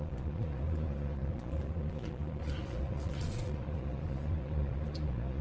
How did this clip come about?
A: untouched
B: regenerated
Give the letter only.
B